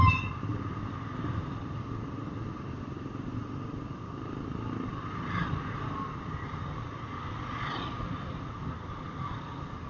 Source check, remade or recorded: recorded